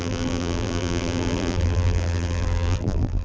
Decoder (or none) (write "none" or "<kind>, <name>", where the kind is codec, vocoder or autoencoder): vocoder, BigVGAN v2